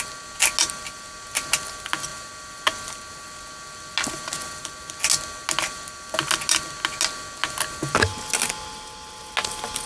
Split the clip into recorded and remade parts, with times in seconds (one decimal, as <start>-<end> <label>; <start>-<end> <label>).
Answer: 0.0-9.9 recorded